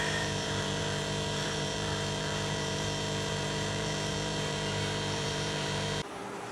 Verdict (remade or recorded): remade